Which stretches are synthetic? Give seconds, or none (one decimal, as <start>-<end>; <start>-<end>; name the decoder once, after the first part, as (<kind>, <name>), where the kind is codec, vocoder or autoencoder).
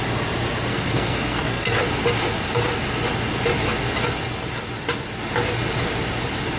0.7-1.8 (codec, SNAC)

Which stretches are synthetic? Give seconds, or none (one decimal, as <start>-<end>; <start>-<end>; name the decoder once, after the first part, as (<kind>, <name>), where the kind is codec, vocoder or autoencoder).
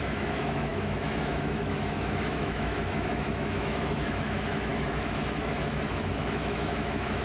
0.0-7.2 (autoencoder, DAC-VAE)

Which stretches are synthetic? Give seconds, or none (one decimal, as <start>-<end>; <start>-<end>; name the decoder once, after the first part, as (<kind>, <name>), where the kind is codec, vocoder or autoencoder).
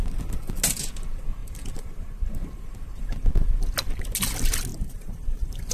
1.4-3.3 (vocoder, BigVGAN v2); 4.7-5.7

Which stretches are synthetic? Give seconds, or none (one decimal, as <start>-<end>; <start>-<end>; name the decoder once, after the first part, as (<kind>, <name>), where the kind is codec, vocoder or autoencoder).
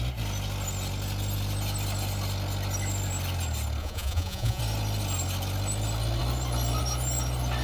3.8-4.6 (vocoder, Vocos)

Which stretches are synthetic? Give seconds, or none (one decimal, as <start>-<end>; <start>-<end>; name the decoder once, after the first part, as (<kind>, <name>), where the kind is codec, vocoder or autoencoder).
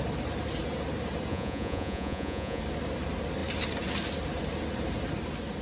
1.3-2.6 (vocoder, Vocos)